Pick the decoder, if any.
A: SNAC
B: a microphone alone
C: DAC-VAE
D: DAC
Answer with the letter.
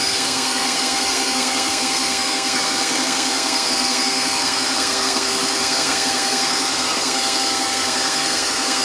A